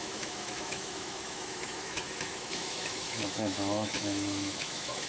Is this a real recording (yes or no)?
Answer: no